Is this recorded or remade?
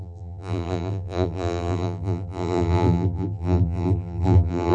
remade